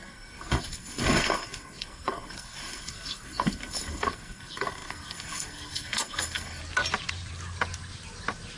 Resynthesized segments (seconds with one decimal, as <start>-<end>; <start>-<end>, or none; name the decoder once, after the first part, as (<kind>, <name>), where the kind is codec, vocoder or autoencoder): 0.0-6.6 (codec, SNAC)